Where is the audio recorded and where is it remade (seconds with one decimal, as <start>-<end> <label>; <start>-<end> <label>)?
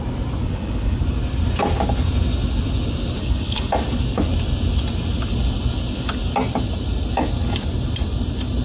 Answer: 0.0-0.4 recorded; 0.4-1.0 remade; 1.0-3.2 recorded; 3.2-3.7 remade; 3.7-8.6 recorded